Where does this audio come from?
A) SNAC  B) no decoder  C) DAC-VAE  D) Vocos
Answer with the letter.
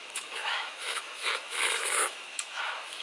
C